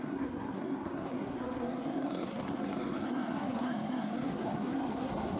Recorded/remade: remade